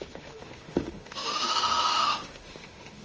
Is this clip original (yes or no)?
no